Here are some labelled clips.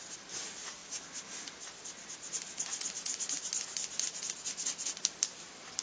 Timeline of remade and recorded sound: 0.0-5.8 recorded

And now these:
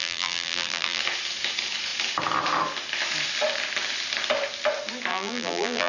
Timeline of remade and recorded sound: 0.0-1.0 remade; 1.0-5.1 recorded; 5.1-5.9 remade

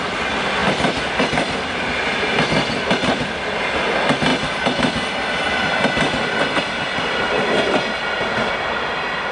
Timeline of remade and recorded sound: 0.0-0.6 recorded; 0.6-2.9 remade; 2.9-9.3 recorded

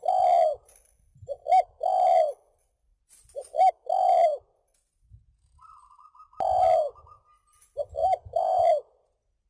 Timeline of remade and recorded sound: 0.0-8.0 recorded; 8.0-8.6 remade; 8.6-9.5 recorded

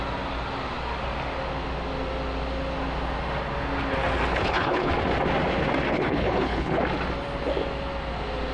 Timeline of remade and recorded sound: 0.0-4.3 recorded; 4.3-4.9 remade; 4.9-5.9 recorded; 5.9-6.8 remade; 6.8-8.5 recorded

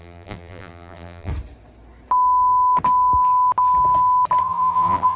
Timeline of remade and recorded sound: 0.0-1.3 remade; 1.3-4.4 recorded; 4.4-5.2 remade

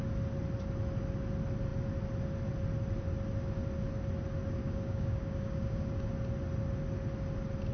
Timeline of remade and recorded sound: 0.0-4.6 recorded; 4.6-5.9 remade; 5.9-7.7 recorded

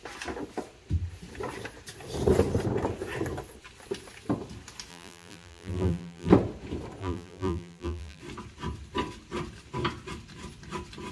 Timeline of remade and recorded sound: 0.0-4.9 recorded; 4.9-6.3 remade; 6.3-7.0 recorded; 7.0-8.2 remade; 8.2-11.1 recorded